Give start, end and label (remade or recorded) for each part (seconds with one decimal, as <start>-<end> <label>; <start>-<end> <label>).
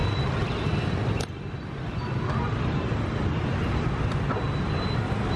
0.0-5.4 recorded